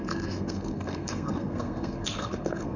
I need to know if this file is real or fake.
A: fake